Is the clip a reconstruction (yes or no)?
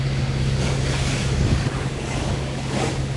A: yes